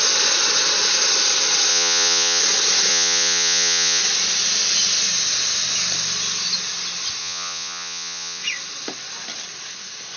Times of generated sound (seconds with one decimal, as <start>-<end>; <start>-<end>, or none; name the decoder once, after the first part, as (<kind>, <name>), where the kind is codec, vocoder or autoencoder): 1.7-2.4 (vocoder, Vocos); 2.9-4.0; 7.2-8.4